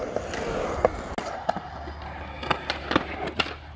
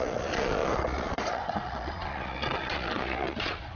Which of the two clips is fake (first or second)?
second